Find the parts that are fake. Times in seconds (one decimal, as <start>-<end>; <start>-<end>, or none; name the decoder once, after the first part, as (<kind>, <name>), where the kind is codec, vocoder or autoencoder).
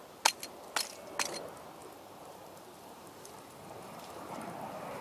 1.8-5.0 (vocoder, BigVGAN v2)